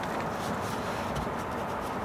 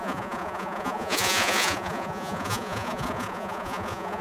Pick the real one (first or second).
first